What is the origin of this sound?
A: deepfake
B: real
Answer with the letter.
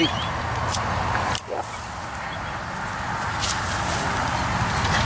B